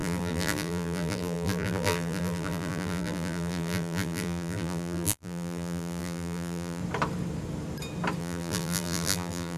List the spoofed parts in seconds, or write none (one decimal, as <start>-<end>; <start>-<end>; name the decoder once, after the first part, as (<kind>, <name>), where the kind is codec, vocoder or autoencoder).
0.0-6.8 (vocoder, BigVGAN v2); 8.2-9.6